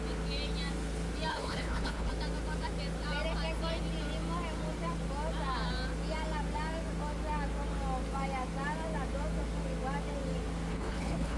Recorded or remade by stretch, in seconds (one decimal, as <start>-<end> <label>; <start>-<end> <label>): 0.0-1.3 recorded; 1.3-2.1 remade; 2.1-10.7 recorded; 10.7-11.4 remade